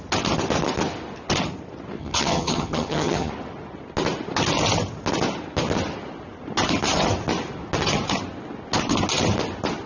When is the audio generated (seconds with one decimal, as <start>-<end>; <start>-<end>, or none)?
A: 2.0-3.3